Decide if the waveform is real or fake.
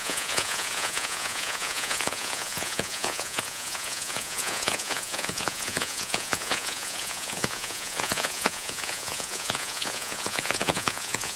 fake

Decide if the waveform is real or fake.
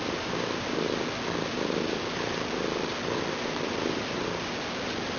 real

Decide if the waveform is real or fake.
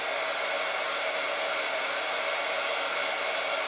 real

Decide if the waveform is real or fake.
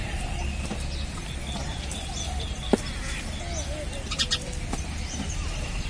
real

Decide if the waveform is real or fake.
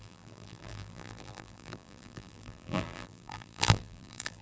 fake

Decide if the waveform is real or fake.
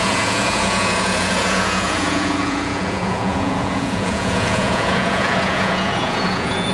fake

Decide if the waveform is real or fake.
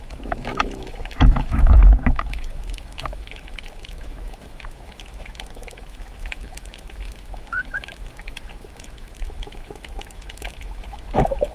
fake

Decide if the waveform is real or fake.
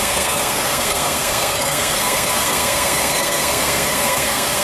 fake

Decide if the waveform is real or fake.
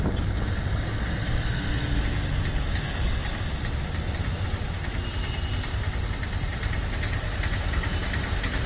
real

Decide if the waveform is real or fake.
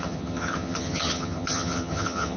fake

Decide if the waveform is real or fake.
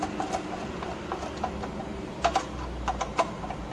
real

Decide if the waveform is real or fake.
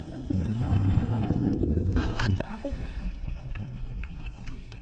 fake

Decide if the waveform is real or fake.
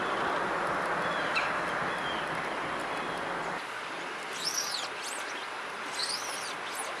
real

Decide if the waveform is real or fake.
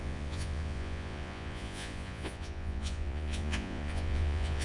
fake